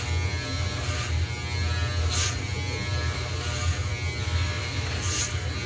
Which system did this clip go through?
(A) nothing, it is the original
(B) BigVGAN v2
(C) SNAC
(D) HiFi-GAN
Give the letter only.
A